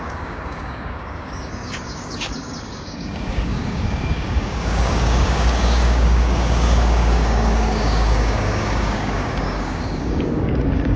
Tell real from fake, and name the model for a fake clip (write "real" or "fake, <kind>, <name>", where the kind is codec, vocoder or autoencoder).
fake, codec, DAC